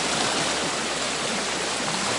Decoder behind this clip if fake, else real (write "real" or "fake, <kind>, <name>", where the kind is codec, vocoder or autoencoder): real